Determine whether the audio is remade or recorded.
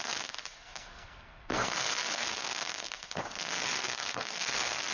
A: remade